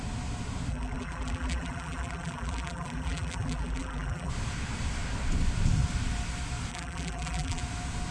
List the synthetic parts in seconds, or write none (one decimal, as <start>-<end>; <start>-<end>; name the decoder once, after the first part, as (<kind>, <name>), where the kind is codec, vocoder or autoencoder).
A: 0.7-4.3 (vocoder, BigVGAN v2); 6.7-7.6